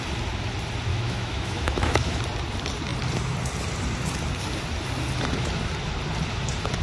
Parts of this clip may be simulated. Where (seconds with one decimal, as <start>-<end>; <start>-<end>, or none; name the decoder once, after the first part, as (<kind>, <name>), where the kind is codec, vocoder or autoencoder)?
0.9-2.2 (autoencoder, DAC-VAE)